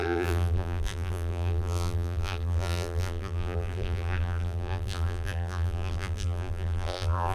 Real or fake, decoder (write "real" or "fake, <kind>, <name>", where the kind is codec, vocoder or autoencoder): fake, vocoder, BigVGAN v2